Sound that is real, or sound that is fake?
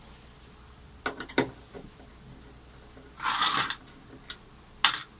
real